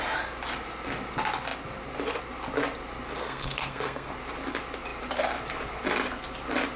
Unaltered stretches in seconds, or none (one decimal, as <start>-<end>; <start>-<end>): 0.0-3.2; 4.1-6.8